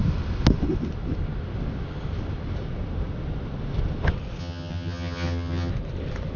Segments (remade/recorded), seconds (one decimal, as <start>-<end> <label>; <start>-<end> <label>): 0.0-4.4 recorded; 4.4-5.7 remade; 5.7-6.4 recorded